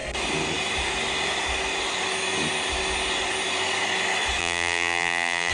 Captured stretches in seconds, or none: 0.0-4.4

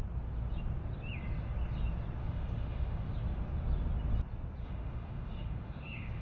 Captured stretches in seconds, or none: 0.0-2.2; 3.1-4.6

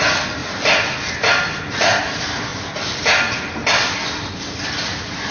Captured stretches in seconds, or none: 0.0-5.3

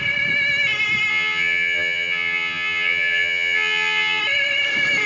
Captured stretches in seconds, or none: 0.0-1.1; 4.2-5.1

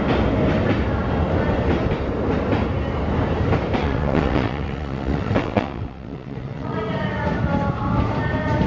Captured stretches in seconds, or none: 0.0-3.8; 6.8-8.7

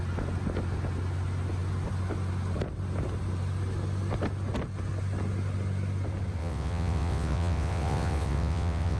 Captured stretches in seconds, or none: 0.0-6.4